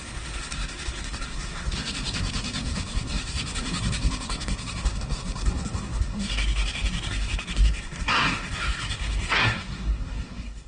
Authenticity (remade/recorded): remade